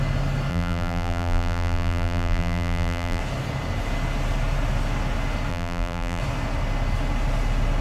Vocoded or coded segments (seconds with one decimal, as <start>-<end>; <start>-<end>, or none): 0.5-3.2; 5.5-6.2